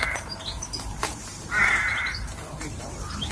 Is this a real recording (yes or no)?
no